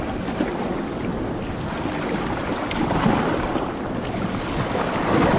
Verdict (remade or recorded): recorded